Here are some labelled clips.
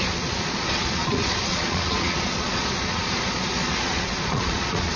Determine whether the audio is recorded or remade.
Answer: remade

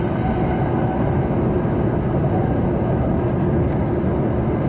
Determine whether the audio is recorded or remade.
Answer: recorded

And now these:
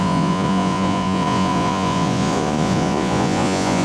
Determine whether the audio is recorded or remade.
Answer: remade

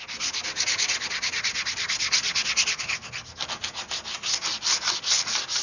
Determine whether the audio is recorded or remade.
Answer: recorded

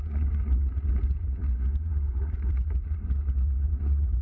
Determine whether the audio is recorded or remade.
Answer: remade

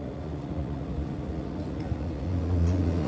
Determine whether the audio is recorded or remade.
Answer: remade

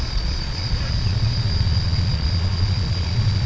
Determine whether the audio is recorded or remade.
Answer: remade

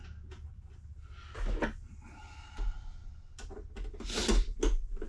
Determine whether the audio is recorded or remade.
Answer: recorded